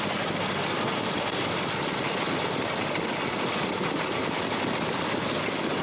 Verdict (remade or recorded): recorded